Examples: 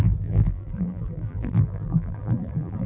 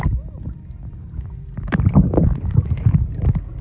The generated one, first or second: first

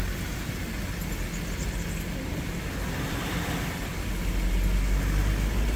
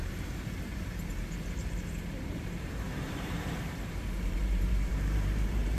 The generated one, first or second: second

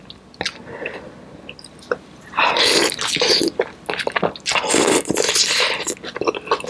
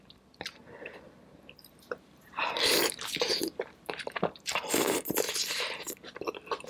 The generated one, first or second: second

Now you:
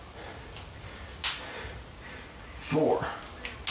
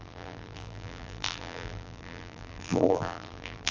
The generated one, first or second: second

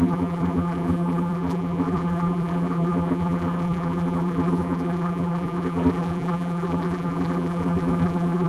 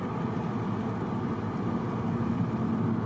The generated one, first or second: first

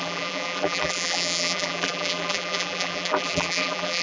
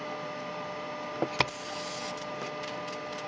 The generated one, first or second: first